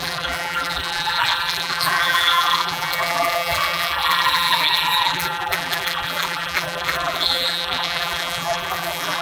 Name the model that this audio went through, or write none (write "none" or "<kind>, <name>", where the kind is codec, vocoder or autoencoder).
vocoder, BigVGAN v2